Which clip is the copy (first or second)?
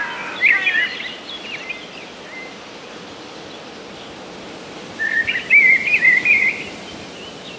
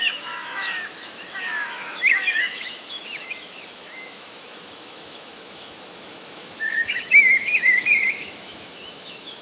second